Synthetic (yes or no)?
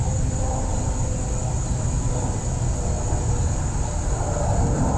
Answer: no